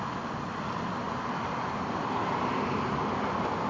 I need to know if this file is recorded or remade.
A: recorded